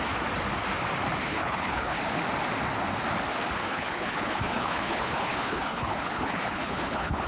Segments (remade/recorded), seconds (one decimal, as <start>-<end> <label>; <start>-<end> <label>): 0.0-1.2 recorded; 1.2-2.2 remade; 2.2-3.6 recorded; 3.6-7.3 remade